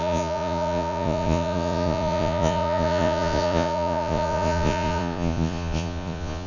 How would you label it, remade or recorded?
remade